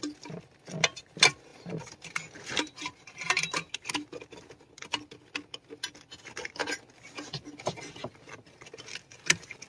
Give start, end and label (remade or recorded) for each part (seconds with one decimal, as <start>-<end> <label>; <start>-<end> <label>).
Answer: 0.0-1.5 recorded; 1.5-3.7 remade; 3.7-9.7 recorded